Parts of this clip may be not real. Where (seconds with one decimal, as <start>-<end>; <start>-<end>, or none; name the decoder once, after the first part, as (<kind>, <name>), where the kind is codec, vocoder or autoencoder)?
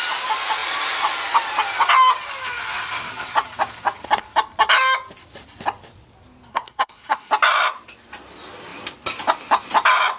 6.5-7.3 (codec, SNAC)